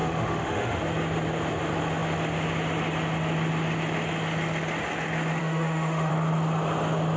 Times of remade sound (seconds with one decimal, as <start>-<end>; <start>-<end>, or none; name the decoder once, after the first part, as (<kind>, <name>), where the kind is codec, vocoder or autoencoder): 0.0-0.8 (autoencoder, DAC-VAE); 5.4-6.1